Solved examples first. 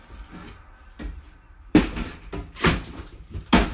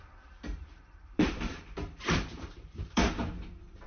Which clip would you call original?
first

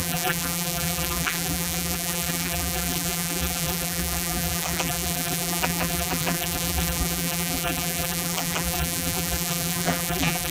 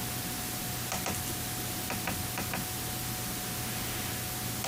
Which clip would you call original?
second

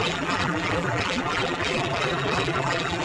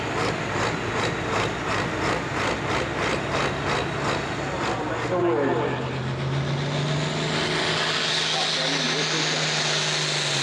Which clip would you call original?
second